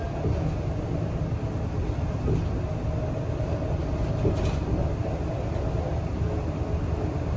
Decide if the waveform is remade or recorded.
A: recorded